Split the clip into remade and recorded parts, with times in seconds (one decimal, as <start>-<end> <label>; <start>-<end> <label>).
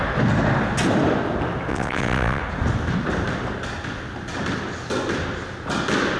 0.0-1.7 recorded; 1.7-2.4 remade; 2.4-6.2 recorded